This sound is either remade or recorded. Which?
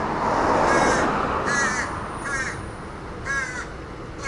recorded